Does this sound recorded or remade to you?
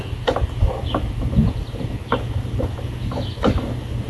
recorded